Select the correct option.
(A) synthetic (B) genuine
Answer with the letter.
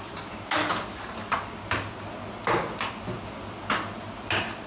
B